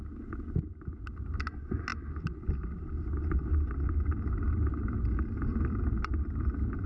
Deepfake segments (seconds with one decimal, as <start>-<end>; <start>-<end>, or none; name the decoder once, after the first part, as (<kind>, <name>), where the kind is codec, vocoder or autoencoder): none